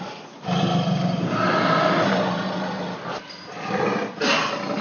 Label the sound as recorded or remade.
recorded